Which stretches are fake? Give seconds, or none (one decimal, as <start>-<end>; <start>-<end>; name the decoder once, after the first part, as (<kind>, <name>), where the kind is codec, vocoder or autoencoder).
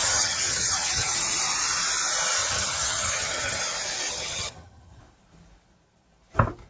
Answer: 0.0-1.2 (vocoder, HiFi-GAN); 2.4-3.6; 4.1-5.0